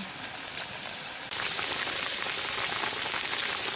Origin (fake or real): real